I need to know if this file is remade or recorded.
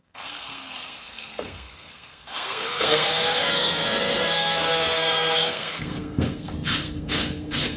remade